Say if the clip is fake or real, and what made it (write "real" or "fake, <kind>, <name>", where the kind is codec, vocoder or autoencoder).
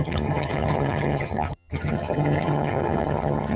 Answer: fake, vocoder, HiFi-GAN